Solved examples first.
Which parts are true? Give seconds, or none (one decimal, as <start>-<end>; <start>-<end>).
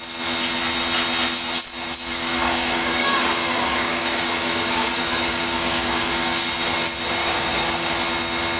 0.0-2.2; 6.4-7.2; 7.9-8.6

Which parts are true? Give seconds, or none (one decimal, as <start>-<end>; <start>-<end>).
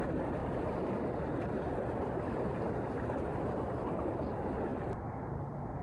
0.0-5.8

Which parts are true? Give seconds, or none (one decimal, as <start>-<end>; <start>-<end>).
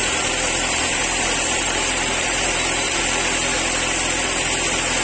3.0-5.0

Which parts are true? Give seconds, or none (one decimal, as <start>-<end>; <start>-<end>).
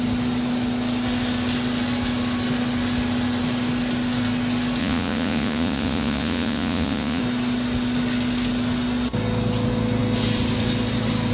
0.0-4.8; 7.2-11.3